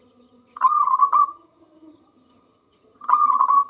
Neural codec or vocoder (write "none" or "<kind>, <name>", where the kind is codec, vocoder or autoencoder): vocoder, HiFi-GAN